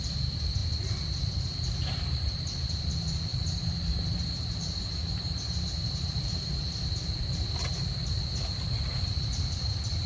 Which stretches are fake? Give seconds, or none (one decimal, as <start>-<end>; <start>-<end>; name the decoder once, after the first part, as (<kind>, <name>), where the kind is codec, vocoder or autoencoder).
0.0-0.6 (vocoder, BigVGAN v2); 1.4-10.1